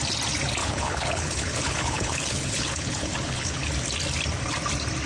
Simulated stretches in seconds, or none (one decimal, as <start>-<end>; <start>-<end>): 0.6-3.7